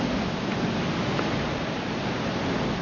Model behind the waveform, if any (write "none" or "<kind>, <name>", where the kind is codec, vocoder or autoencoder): none